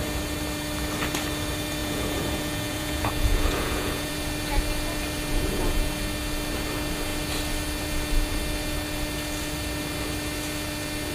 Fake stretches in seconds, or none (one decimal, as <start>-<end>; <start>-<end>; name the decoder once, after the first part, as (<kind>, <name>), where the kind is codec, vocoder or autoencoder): 1.8-4.1 (vocoder, Vocos); 5.3-5.9